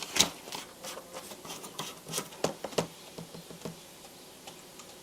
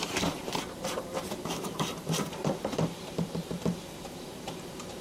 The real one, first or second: first